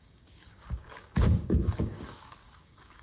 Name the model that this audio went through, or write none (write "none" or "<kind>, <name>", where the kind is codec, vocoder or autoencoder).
codec, DAC